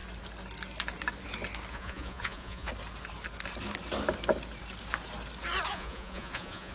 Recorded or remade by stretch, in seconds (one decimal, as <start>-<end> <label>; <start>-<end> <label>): 0.0-1.7 recorded; 1.7-2.7 remade; 2.7-5.7 recorded; 5.7-6.7 remade